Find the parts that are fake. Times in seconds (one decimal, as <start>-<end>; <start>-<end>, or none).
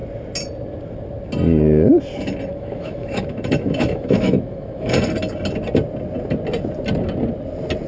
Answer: 2.5-4.9